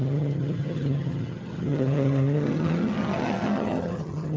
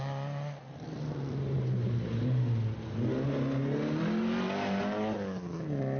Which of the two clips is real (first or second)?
second